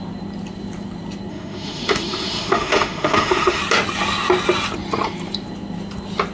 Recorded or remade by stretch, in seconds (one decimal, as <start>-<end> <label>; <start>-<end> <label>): 0.0-1.3 recorded; 1.3-3.6 remade; 3.6-6.3 recorded